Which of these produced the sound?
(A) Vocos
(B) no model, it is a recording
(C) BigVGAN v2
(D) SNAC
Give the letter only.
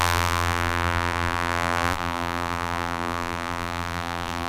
C